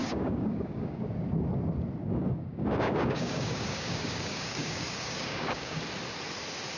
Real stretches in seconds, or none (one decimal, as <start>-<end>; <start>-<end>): 1.0-2.0; 5.8-6.8